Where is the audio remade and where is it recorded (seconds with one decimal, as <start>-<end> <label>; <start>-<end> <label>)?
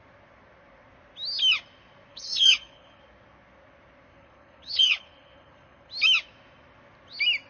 0.0-2.1 recorded; 2.1-3.0 remade; 3.0-4.1 recorded; 4.1-5.9 remade; 5.9-7.5 recorded